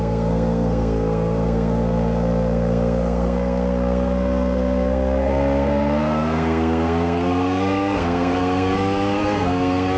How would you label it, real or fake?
fake